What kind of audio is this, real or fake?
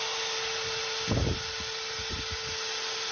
real